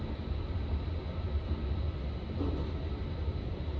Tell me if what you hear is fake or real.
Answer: real